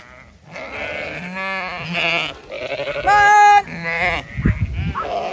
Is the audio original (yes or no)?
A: yes